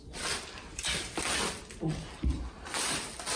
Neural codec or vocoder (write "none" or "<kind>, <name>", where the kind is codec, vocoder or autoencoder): none